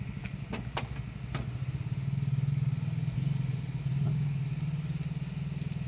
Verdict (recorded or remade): recorded